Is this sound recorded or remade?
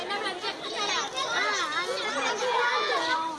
recorded